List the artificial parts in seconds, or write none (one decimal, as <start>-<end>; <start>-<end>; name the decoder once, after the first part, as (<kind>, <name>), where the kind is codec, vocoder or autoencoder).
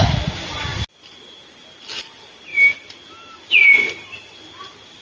none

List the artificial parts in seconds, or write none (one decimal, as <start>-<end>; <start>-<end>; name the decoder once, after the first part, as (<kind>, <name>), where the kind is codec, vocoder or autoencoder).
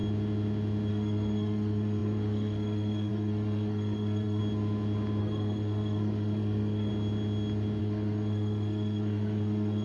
0.9-4.4 (codec, SNAC); 5.2-6.9; 7.8-9.8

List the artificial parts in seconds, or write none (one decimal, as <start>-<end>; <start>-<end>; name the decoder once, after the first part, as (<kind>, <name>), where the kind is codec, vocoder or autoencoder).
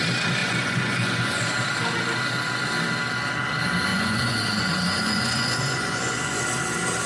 0.4-1.5 (vocoder, Vocos); 3.9-6.4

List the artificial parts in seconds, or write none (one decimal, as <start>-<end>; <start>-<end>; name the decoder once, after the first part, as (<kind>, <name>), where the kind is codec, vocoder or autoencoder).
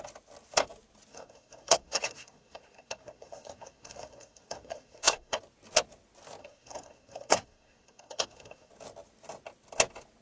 1.1-5.4 (codec, SNAC); 6.4-8.7